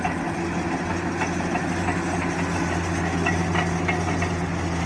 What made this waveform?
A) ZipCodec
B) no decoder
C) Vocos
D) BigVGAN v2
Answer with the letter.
B